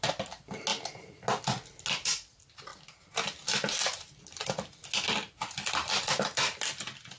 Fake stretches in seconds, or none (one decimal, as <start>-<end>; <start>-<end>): none